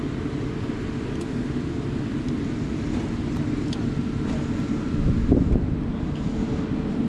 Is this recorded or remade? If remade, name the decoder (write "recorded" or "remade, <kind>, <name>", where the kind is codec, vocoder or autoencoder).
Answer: recorded